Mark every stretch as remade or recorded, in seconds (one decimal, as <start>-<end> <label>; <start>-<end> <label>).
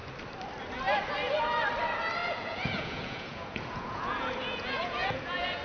0.0-2.2 recorded; 2.2-5.6 remade